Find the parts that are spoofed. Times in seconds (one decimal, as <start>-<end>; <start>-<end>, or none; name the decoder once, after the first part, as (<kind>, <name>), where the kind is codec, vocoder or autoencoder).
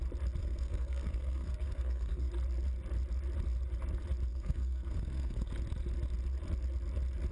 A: 0.4-2.3 (codec, SNAC); 4.3-5.5